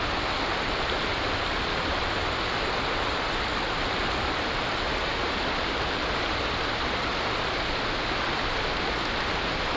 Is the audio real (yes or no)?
yes